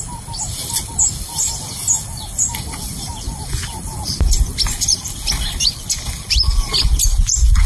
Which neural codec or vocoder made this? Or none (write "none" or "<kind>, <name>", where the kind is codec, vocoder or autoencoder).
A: none